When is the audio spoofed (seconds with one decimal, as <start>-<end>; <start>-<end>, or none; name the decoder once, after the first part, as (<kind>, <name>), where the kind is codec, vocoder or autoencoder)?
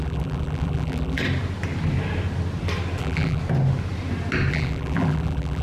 0.0-1.2 (vocoder, BigVGAN v2); 3.0-3.4; 4.5-5.6